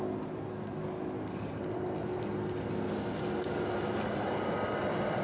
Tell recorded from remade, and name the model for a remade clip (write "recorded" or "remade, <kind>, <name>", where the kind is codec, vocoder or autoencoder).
recorded